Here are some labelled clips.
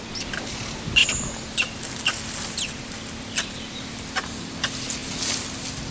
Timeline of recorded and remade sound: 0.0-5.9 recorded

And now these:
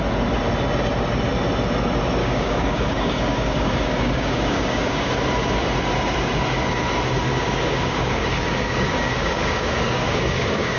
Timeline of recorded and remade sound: 0.0-2.2 recorded; 2.2-5.1 remade; 5.1-7.3 recorded; 7.3-10.8 remade

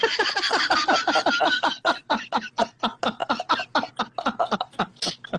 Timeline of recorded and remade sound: 0.0-3.2 remade; 3.2-4.0 recorded; 4.0-5.4 remade

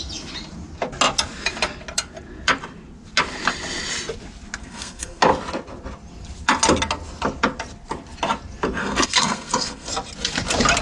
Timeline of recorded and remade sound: 0.0-4.6 recorded; 4.6-5.2 remade; 5.2-8.8 recorded; 8.8-9.9 remade; 9.9-10.8 recorded

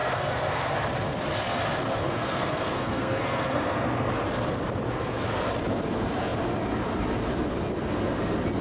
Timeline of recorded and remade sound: 0.0-0.7 remade; 0.7-2.0 recorded; 2.0-4.1 remade; 4.1-8.6 recorded

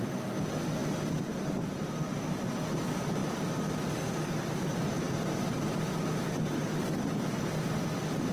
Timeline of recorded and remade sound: 0.0-4.8 recorded; 4.8-6.5 remade; 6.5-8.3 recorded